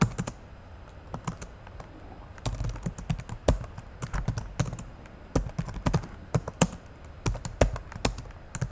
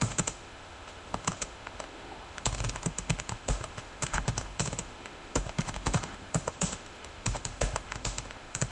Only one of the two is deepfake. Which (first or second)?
second